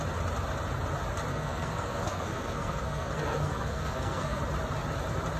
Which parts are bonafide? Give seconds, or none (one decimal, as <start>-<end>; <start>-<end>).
0.0-1.3; 4.4-5.4